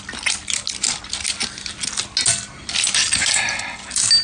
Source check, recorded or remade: recorded